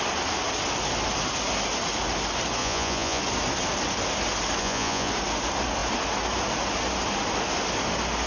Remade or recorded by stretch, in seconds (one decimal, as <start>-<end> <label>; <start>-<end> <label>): 0.0-2.6 recorded; 2.6-3.2 remade; 3.2-4.6 recorded; 4.6-5.1 remade; 5.1-8.3 recorded